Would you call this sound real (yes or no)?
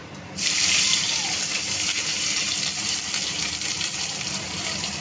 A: no